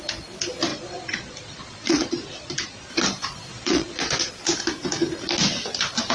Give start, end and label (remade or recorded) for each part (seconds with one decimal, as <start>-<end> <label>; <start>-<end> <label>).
0.0-0.7 recorded; 0.7-2.9 remade; 2.9-3.5 recorded; 3.5-4.3 remade; 4.3-6.1 recorded